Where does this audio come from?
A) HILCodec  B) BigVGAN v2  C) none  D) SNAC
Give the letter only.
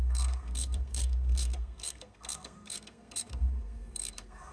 D